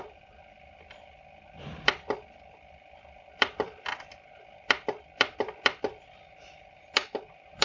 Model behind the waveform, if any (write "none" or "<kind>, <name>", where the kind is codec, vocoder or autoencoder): vocoder, BigVGAN v2